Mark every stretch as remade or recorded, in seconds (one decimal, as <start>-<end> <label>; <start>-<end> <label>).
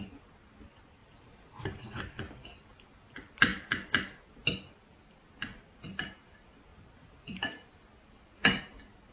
0.0-1.0 recorded; 1.0-2.0 remade; 2.0-6.7 recorded; 6.7-7.8 remade; 7.8-9.1 recorded